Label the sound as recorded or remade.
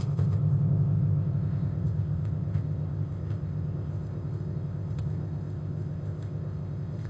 remade